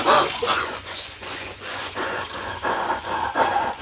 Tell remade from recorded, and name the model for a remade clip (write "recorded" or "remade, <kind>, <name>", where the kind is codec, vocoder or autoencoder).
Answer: remade, vocoder, Vocos